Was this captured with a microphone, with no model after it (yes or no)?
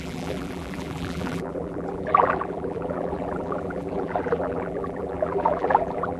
no